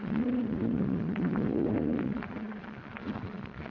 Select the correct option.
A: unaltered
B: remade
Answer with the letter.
B